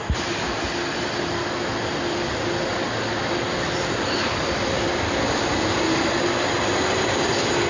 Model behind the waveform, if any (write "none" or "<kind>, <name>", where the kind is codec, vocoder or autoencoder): vocoder, BigVGAN v2